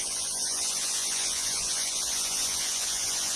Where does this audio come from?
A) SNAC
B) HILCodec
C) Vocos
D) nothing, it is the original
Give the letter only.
C